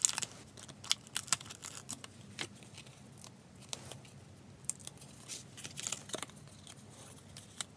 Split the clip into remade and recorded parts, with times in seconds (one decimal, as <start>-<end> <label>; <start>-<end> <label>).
0.0-7.8 recorded